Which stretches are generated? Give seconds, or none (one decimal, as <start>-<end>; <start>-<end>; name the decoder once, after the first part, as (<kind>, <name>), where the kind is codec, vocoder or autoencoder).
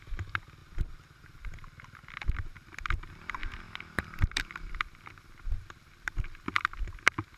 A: 0.0-3.4 (vocoder, BigVGAN v2); 3.9-7.4